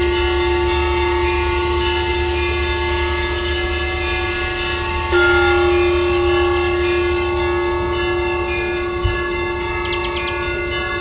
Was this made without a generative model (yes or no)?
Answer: yes